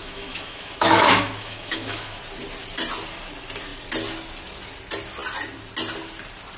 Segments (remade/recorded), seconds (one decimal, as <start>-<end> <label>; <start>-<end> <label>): 0.0-2.2 remade; 2.2-6.6 recorded